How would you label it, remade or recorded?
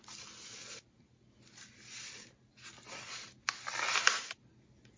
recorded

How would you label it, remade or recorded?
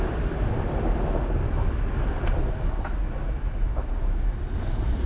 recorded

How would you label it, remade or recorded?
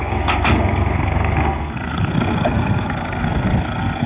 remade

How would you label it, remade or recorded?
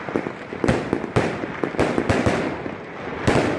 recorded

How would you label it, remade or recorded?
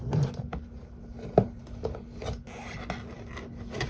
recorded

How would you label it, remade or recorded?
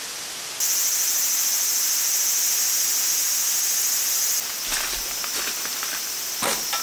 recorded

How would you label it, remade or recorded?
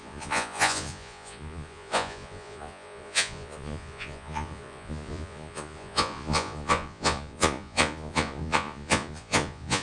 remade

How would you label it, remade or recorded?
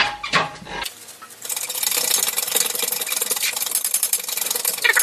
recorded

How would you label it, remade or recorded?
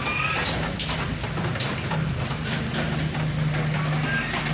recorded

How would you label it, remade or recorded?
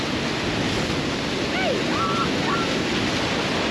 recorded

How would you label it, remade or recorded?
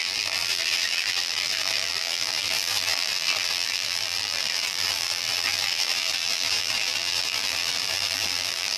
remade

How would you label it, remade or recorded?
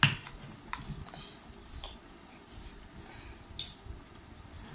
recorded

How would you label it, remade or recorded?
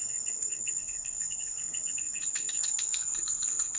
remade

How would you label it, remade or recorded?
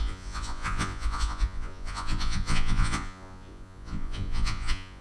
remade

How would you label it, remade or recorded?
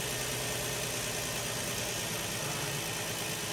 recorded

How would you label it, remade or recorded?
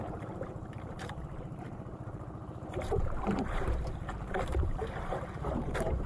remade